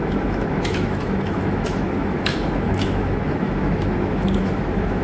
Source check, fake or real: fake